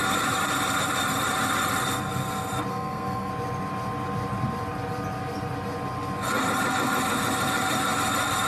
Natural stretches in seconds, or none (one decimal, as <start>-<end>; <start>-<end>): 0.0-2.7; 3.3-8.5